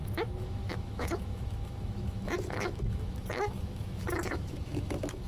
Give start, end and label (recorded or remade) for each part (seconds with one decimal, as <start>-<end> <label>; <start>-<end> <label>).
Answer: 0.0-5.3 remade